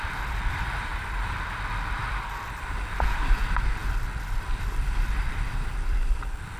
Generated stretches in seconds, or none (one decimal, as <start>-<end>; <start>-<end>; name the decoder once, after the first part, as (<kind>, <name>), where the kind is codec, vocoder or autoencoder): 0.0-6.6 (vocoder, BigVGAN v2)